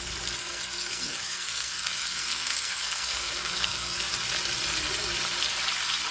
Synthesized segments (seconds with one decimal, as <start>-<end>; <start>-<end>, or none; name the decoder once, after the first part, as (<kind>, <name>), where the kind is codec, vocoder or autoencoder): 0.4-4.1 (codec, SNAC)